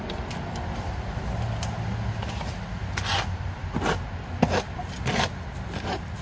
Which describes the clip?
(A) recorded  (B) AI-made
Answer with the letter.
A